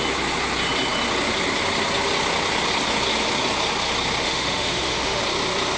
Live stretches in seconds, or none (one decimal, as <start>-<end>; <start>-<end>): 0.0-4.2; 5.2-5.8

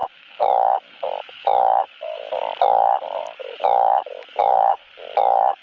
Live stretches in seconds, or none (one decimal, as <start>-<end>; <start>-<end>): 2.3-3.4; 4.7-5.6

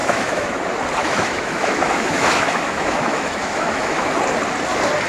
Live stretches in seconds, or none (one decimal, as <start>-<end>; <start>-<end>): 0.6-1.0; 4.1-5.1

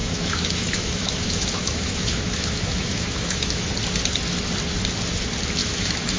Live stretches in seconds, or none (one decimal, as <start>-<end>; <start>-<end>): 3.7-5.6

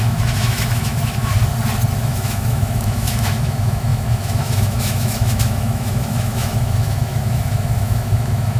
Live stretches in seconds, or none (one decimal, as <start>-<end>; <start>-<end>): 1.3-2.0

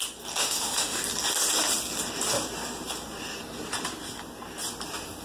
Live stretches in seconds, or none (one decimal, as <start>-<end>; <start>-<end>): 0.0-0.4; 1.0-5.2

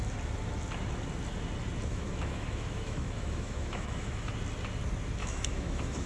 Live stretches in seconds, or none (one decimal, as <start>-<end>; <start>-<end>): 0.0-1.9; 4.3-5.2